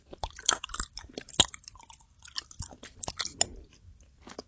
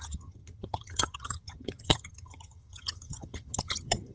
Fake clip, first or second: second